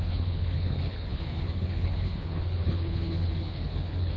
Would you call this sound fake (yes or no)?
yes